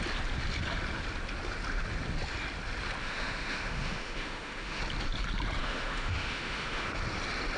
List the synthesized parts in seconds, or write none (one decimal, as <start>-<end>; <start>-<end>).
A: 3.0-4.8; 5.6-6.9